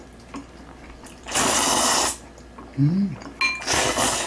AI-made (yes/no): no